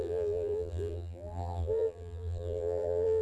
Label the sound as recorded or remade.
remade